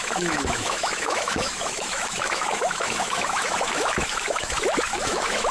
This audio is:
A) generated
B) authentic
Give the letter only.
A